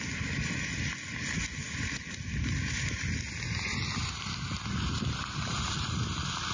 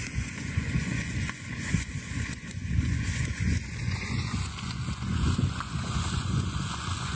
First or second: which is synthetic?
second